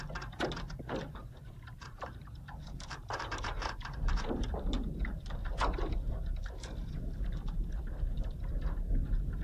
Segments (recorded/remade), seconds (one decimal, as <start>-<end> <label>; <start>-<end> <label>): 0.0-1.2 recorded; 1.2-4.6 remade; 4.6-9.4 recorded